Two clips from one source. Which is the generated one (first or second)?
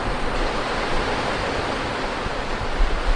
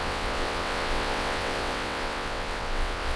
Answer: second